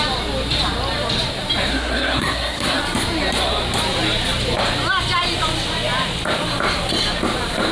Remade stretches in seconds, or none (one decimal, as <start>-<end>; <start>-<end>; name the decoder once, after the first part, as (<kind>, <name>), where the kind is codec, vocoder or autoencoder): 1.7-2.8 (codec, SNAC)

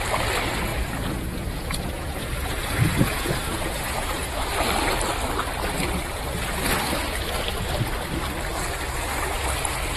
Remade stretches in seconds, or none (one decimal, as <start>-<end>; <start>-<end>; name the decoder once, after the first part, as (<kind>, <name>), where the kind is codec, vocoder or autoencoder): 0.7-4.5 (vocoder, Vocos)

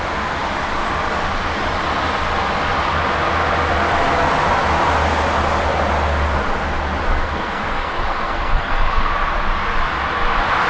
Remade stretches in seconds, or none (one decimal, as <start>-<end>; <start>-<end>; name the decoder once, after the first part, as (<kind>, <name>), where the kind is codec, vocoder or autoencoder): 7.1-9.1 (codec, SNAC)

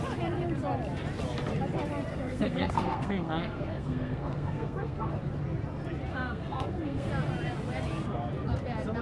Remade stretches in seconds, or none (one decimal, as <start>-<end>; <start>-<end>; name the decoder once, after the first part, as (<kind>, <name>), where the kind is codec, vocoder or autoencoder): 2.1-5.1 (codec, SNAC); 6.1-7.1